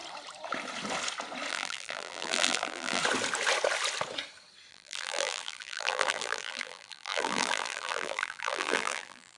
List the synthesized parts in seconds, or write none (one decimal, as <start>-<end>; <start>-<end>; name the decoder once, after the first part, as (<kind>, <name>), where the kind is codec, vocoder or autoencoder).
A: 1.5-3.0 (vocoder, BigVGAN v2); 4.7-9.4